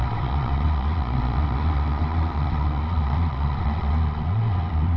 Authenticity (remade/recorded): remade